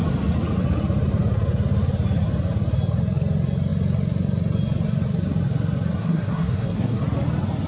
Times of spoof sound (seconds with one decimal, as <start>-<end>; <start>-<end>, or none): 6.0-7.0